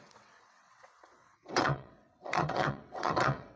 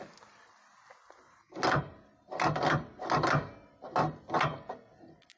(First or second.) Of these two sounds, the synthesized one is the first